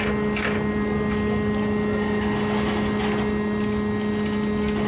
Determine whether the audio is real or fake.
real